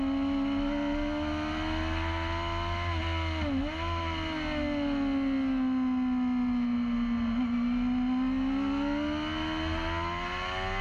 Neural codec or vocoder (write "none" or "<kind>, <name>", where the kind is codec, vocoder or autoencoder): none